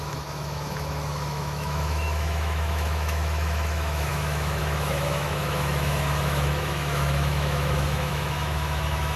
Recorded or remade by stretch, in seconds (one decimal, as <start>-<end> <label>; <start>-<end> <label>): 0.0-9.2 remade